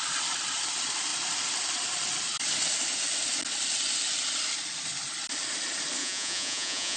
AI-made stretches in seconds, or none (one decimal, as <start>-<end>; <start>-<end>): 6.0-7.0